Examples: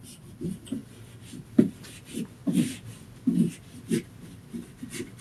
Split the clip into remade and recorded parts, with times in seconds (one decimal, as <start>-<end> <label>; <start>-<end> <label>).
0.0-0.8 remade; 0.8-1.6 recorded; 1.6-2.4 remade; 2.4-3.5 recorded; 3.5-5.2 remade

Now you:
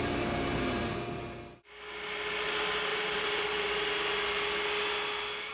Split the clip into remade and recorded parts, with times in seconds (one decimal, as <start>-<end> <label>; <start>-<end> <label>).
0.0-2.9 recorded; 2.9-3.7 remade; 3.7-5.5 recorded

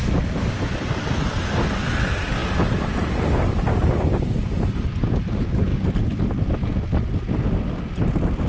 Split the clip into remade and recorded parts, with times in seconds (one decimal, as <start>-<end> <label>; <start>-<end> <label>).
0.0-8.5 recorded